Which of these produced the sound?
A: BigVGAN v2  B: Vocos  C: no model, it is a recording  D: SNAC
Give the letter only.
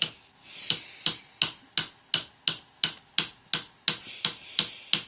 C